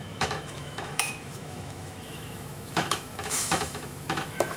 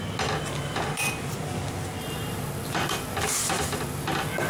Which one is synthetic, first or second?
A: first